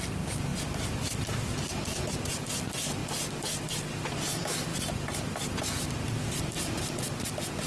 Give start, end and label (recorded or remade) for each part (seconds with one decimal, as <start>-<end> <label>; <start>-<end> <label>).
0.0-7.7 recorded